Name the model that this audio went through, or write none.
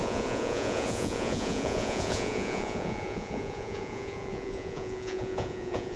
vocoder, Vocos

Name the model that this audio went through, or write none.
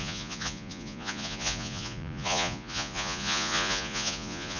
vocoder, Vocos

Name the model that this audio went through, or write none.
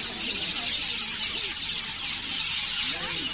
none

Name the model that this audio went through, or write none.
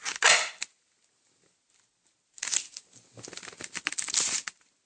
none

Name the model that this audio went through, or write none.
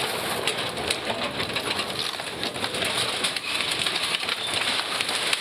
none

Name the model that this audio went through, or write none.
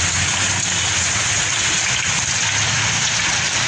none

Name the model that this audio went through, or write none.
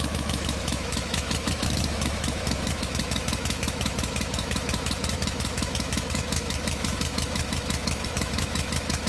autoencoder, DAC-VAE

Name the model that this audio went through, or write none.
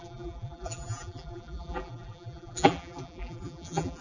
vocoder, BigVGAN v2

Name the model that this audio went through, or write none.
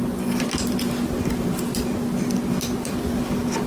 none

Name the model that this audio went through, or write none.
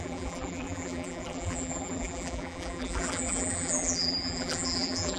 vocoder, BigVGAN v2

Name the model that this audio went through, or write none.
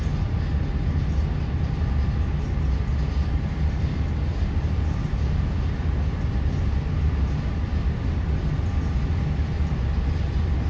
none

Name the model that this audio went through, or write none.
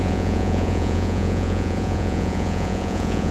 vocoder, Vocos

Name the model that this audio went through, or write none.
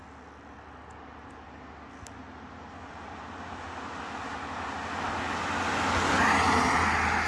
none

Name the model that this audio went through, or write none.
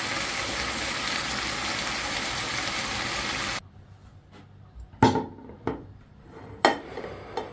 none